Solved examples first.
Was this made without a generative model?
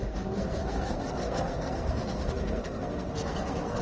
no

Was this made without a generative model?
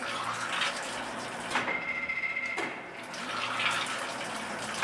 yes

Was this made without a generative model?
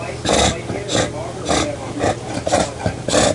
yes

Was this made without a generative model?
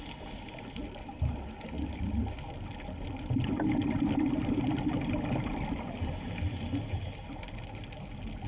yes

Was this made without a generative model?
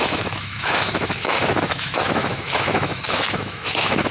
no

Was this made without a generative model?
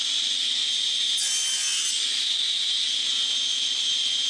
yes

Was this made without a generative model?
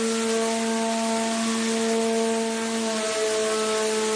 yes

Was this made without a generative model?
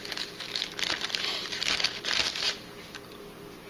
yes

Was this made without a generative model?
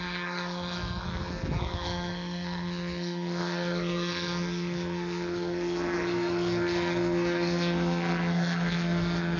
no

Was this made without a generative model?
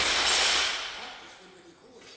yes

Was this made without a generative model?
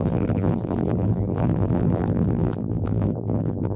no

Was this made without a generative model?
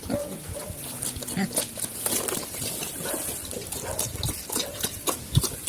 yes